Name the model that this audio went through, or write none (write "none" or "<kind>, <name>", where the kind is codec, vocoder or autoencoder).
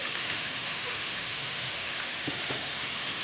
autoencoder, DAC-VAE